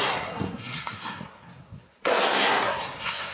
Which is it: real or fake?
fake